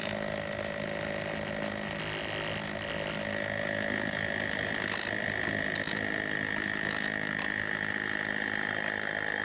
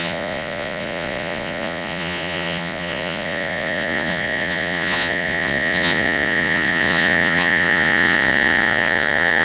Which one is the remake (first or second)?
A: second